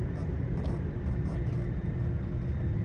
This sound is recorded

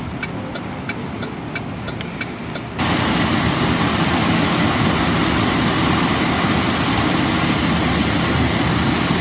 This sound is recorded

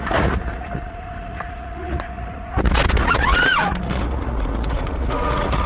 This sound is remade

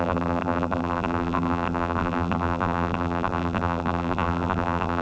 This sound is remade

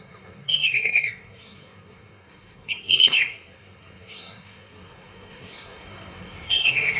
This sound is remade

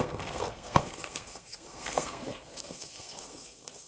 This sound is remade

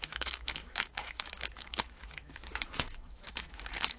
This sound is remade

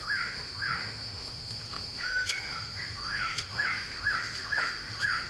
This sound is remade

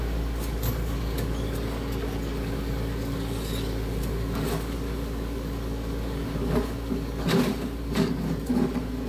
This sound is remade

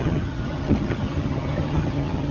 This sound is remade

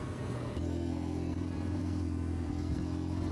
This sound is remade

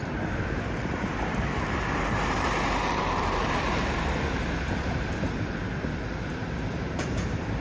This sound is remade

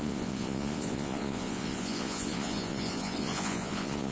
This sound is remade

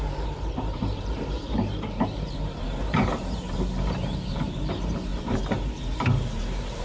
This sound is remade